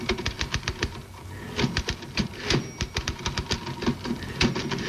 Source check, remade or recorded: recorded